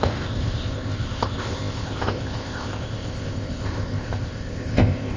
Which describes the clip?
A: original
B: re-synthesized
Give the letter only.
B